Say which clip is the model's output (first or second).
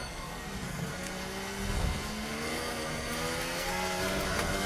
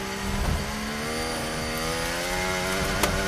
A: first